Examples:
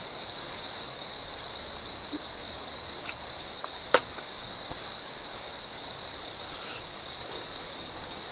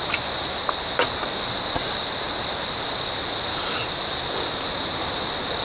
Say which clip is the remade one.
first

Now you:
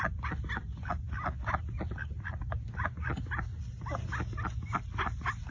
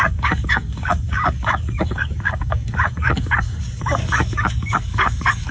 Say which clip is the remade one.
second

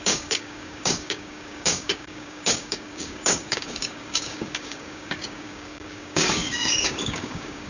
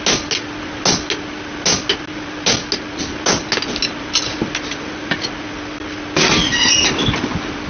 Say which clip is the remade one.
first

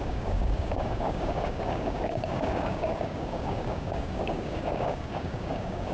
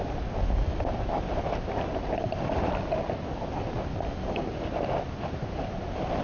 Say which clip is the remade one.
first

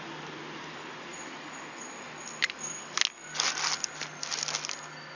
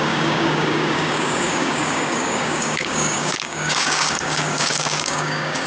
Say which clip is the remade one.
second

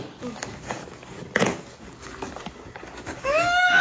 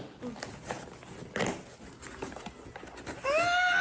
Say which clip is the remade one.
first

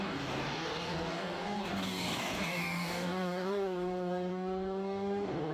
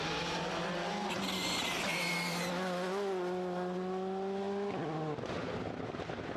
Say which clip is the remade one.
first